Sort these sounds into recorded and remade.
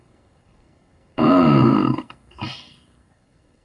remade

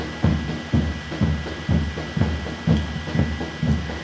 recorded